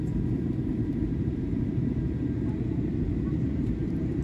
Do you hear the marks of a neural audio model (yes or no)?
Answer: yes